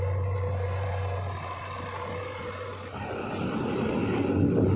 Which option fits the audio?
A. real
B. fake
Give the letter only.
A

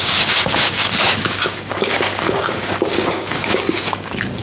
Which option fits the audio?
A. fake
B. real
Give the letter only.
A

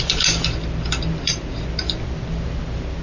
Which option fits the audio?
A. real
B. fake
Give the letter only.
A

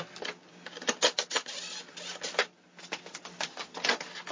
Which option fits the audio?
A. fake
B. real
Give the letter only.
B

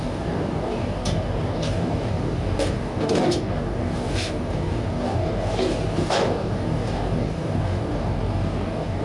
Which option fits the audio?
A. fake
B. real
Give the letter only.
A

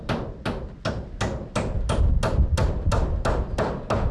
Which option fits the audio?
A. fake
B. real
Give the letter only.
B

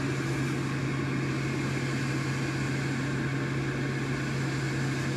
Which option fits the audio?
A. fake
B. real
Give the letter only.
B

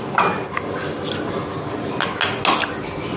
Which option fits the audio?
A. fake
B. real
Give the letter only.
B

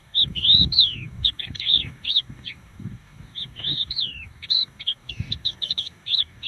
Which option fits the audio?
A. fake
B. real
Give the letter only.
A